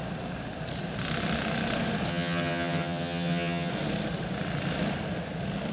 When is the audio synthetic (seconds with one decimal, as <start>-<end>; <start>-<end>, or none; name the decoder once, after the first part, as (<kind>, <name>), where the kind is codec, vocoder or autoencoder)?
2.1-3.7 (vocoder, HiFi-GAN)